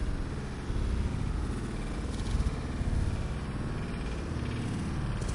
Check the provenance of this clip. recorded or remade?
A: recorded